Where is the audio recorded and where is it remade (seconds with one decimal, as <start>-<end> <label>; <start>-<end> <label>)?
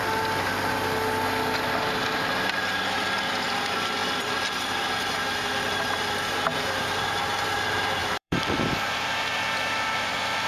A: 0.0-8.0 recorded; 8.0-10.1 remade; 10.1-10.5 recorded